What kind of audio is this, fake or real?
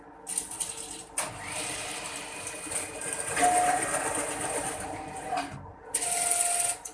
real